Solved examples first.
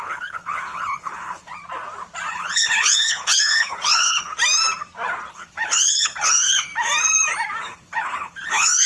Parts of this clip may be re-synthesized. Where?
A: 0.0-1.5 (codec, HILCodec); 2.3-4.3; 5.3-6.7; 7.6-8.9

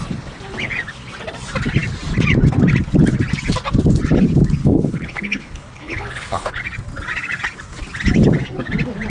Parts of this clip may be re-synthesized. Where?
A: 4.6-6.6 (codec, HILCodec)

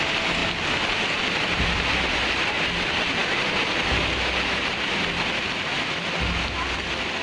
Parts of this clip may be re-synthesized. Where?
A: none

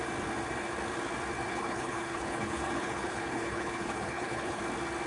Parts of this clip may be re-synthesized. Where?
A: 1.5-4.6 (codec, HILCodec)

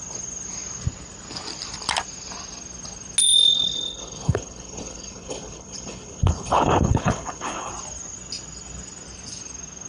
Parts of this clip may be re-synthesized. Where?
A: 3.2-7.7 (codec, HILCodec)

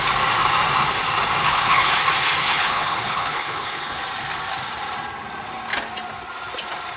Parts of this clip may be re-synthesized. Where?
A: 1.4-1.9 (codec, HILCodec); 2.4-4.0